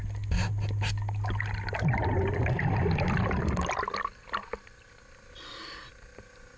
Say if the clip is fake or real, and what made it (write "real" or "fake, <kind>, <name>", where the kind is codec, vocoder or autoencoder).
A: real